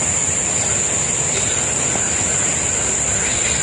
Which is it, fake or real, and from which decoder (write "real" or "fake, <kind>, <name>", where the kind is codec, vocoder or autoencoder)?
real